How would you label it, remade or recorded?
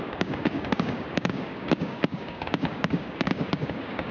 remade